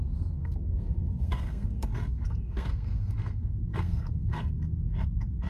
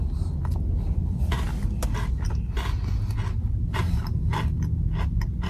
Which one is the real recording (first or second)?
second